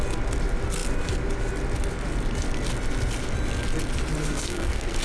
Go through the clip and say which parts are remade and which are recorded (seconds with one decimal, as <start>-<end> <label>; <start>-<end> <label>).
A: 0.0-4.2 recorded; 4.2-5.0 remade

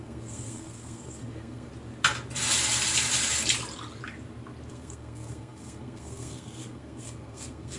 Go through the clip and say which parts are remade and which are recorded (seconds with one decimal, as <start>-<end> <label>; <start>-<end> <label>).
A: 0.0-1.7 remade; 1.7-4.7 recorded; 4.7-7.8 remade

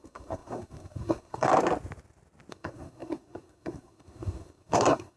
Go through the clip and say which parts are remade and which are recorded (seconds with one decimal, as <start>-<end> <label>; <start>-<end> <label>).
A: 0.0-1.5 remade; 1.5-2.5 recorded; 2.5-5.2 remade

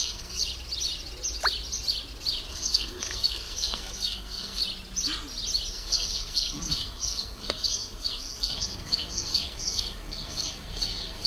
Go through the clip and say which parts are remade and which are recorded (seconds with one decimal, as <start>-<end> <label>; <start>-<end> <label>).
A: 0.0-0.4 remade; 0.4-2.5 recorded; 2.5-4.6 remade; 4.6-5.7 recorded; 5.7-11.3 remade

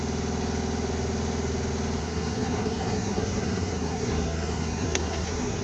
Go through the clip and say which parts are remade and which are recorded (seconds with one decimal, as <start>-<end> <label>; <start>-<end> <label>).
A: 0.0-2.0 recorded; 2.0-5.6 remade

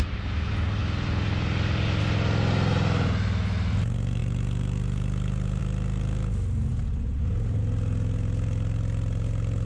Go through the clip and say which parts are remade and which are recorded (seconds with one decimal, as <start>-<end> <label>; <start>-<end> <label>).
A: 0.0-9.7 recorded